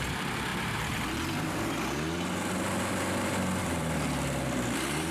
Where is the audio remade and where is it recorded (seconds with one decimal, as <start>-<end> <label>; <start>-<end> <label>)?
0.0-0.5 remade; 0.5-3.6 recorded; 3.6-5.1 remade